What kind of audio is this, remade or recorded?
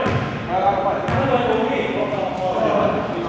recorded